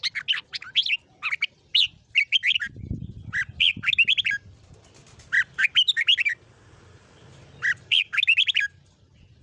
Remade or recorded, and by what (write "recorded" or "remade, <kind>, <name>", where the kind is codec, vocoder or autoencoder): recorded